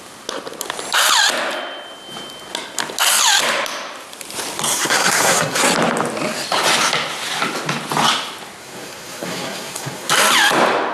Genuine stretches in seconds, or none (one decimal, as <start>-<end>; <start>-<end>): 0.0-4.7; 5.6-8.6; 10.1-10.9